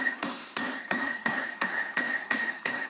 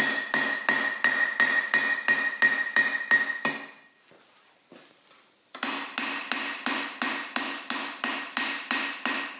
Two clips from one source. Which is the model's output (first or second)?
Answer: first